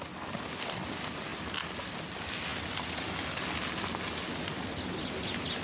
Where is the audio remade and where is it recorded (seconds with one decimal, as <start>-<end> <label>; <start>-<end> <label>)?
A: 0.0-5.6 recorded